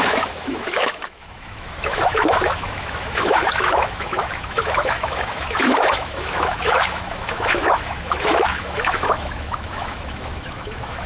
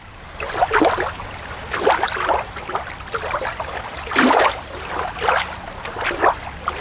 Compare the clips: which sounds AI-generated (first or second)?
first